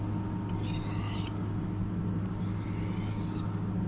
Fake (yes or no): no